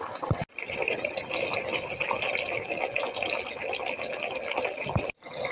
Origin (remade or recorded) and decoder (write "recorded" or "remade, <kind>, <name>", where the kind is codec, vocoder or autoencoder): recorded